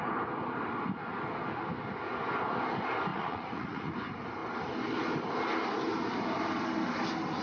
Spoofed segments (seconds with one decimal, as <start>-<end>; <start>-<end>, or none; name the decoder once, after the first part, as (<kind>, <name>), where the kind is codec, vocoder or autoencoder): 3.1-3.9 (vocoder, Vocos)